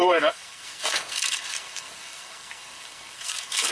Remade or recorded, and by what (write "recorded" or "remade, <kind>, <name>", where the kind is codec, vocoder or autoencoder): remade, codec, SNAC